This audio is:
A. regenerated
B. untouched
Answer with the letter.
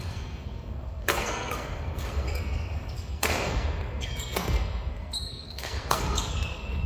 A